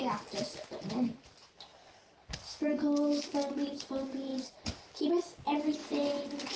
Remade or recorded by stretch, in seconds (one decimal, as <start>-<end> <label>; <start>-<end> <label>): 0.0-6.6 recorded